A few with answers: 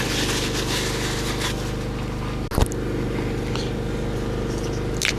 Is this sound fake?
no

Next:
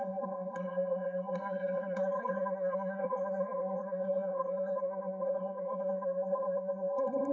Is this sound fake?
yes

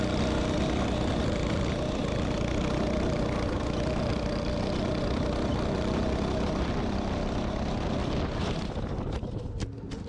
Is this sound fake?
no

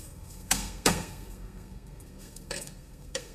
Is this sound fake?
yes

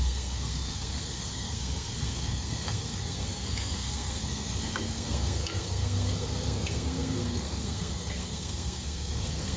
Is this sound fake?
yes